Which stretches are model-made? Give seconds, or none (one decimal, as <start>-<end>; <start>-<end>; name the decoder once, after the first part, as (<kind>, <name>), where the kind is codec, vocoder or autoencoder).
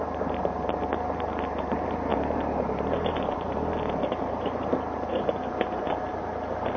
none